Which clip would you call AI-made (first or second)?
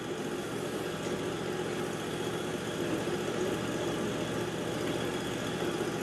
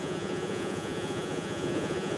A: second